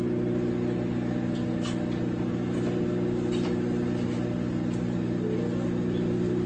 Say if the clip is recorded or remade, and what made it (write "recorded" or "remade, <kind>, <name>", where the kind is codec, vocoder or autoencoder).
recorded